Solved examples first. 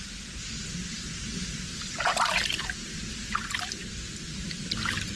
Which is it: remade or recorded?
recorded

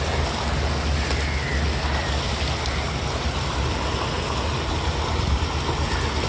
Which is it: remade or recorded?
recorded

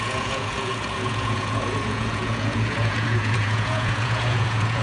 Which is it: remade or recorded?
remade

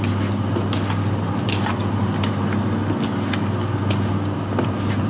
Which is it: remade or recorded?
recorded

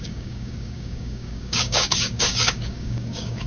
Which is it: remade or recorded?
remade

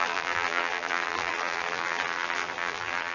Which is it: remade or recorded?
remade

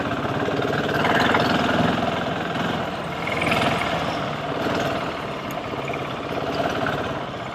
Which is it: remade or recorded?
recorded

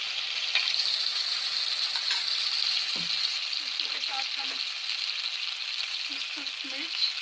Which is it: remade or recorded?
recorded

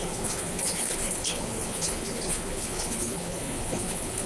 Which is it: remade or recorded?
remade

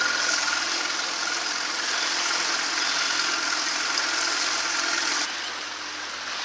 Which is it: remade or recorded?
recorded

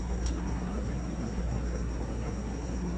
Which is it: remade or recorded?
remade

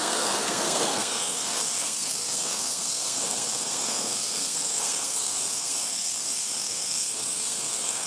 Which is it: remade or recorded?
remade